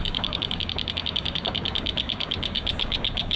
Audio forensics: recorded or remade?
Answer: remade